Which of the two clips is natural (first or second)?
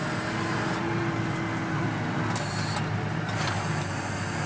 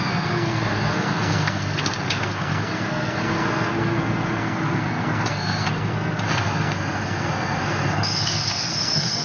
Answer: first